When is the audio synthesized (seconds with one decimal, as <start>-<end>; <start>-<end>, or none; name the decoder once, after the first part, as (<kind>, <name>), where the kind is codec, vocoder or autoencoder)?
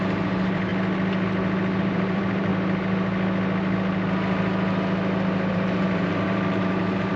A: 0.0-0.7 (vocoder, BigVGAN v2); 1.8-2.5; 5.5-7.2